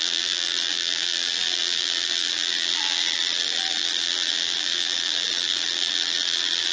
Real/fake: fake